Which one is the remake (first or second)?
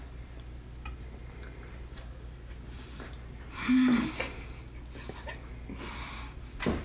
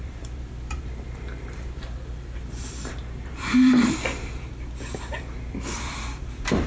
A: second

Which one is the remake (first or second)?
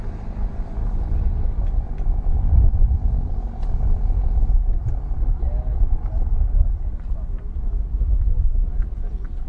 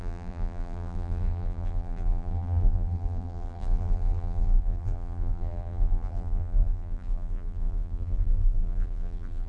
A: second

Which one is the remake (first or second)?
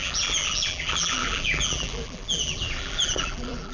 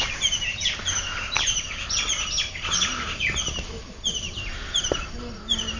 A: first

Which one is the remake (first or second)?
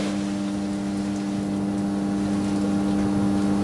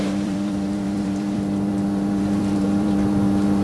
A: second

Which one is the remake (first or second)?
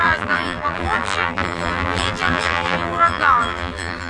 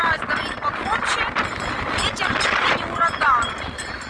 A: first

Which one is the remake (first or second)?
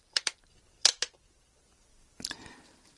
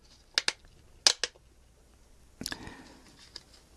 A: first